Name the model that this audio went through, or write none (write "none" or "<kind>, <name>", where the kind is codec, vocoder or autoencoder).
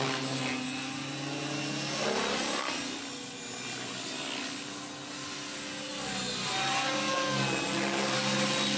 none